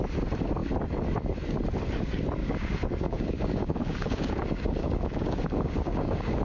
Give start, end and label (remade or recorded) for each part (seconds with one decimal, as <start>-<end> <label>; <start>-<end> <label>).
0.0-2.4 recorded; 2.4-6.4 remade